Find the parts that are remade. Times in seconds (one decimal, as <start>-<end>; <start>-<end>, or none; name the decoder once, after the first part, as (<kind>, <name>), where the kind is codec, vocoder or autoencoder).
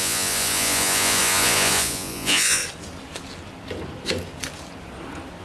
0.0-2.6 (vocoder, Vocos)